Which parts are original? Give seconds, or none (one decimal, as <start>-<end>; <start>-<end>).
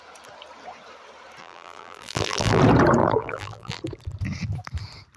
0.0-1.4; 2.6-3.0; 3.8-5.2